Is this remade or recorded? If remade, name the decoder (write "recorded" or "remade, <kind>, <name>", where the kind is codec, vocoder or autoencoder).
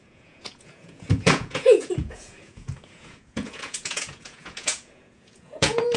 remade, vocoder, Vocos